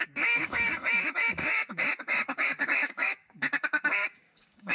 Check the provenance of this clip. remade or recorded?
remade